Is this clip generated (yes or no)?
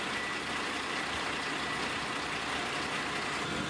no